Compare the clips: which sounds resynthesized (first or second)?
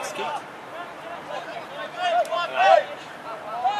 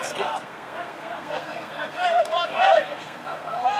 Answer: second